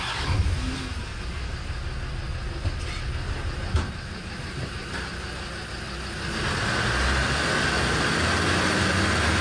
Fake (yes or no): no